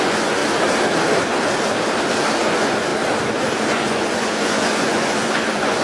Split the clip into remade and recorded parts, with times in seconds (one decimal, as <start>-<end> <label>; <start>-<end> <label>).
0.0-0.4 remade; 0.4-2.4 recorded; 2.4-2.9 remade; 2.9-3.7 recorded; 3.7-5.8 remade